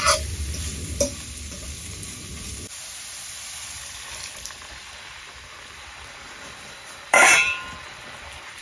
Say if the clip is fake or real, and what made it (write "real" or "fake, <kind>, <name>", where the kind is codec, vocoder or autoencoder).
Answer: fake, vocoder, BigVGAN v2